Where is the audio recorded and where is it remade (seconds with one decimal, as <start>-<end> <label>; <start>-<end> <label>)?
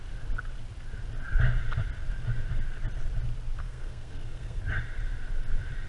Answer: 0.0-3.6 recorded; 3.6-4.6 remade; 4.6-5.9 recorded